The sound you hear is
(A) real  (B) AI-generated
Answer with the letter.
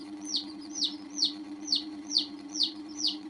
B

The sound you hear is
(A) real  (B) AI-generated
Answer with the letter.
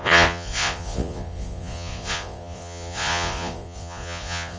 B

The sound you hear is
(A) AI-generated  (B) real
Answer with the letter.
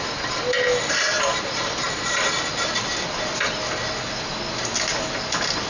B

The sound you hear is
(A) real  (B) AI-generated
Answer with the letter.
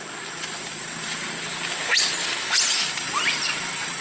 A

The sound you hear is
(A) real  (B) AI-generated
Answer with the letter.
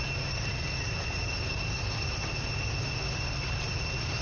A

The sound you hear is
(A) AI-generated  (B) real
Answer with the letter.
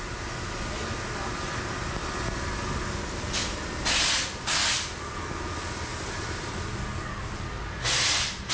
B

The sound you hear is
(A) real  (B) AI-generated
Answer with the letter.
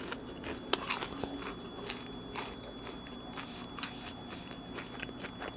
A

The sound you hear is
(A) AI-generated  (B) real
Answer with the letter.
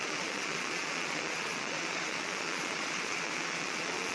A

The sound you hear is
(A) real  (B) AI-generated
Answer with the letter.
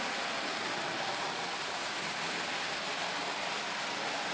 A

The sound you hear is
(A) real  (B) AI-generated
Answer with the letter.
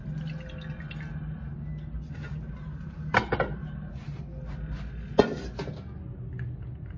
A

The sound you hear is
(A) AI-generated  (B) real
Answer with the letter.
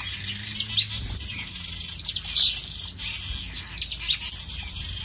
B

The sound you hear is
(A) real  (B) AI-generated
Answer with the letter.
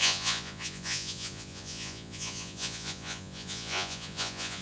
B